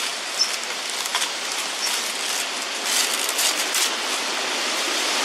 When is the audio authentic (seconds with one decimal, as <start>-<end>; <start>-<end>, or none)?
0.0-5.2